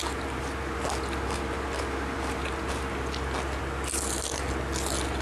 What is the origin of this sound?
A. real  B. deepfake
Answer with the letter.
A